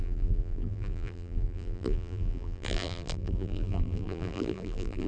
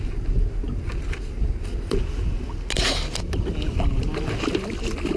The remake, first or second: first